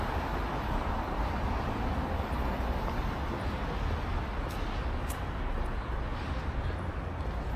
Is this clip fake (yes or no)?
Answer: no